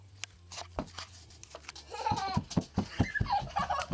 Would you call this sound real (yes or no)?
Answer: yes